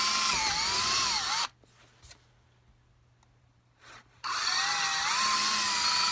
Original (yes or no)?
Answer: yes